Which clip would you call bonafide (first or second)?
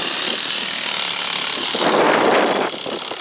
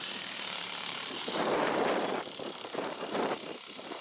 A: first